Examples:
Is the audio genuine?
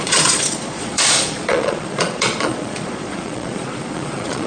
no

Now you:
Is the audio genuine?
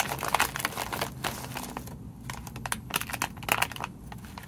yes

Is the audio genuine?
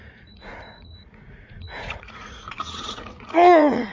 no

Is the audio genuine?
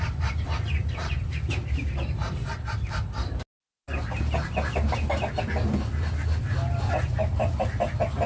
yes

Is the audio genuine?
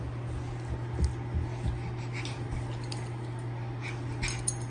yes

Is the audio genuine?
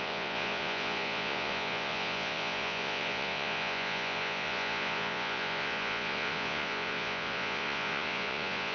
no